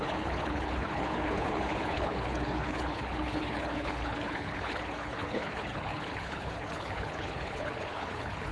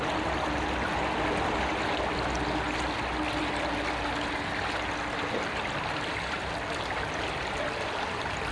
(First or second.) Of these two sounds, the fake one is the first